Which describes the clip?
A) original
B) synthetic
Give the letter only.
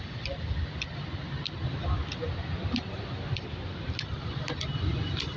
A